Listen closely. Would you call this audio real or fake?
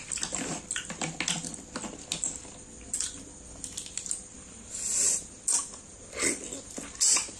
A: real